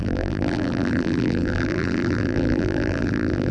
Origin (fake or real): fake